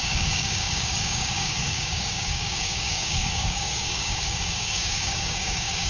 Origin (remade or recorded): remade